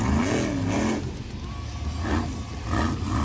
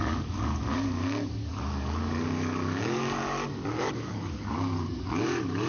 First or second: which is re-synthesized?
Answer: second